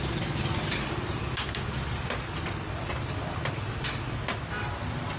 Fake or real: real